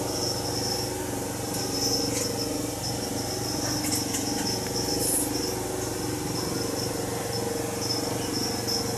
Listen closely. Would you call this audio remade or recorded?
recorded